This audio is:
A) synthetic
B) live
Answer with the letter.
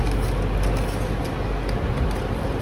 B